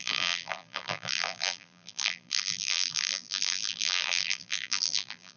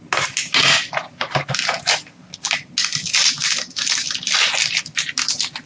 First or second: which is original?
second